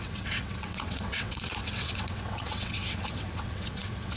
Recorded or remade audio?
remade